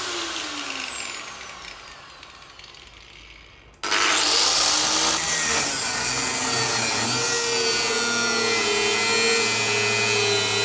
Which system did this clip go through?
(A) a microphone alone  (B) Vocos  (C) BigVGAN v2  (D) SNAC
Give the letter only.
A